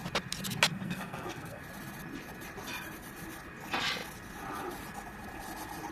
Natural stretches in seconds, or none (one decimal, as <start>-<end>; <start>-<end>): 0.0-0.7; 1.6-5.9